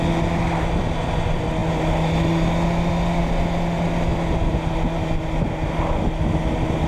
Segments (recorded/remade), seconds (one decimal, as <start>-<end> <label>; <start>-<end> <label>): 0.0-6.9 recorded